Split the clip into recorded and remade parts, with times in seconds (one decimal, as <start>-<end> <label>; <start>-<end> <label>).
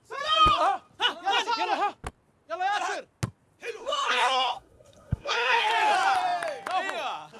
0.0-3.8 recorded; 3.8-5.7 remade; 5.7-7.4 recorded